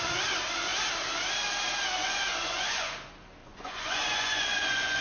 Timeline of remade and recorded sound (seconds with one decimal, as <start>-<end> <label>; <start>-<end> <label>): 0.0-2.0 recorded; 2.0-2.9 remade; 2.9-3.4 recorded; 3.4-5.0 remade